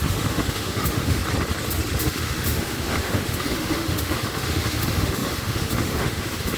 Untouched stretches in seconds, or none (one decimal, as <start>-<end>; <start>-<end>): 1.2-2.0